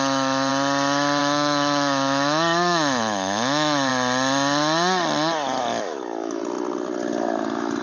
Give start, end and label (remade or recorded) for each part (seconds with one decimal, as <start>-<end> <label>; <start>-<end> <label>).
0.0-0.5 remade; 0.5-1.2 recorded; 1.2-3.9 remade; 3.9-5.6 recorded; 5.6-6.4 remade; 6.4-7.8 recorded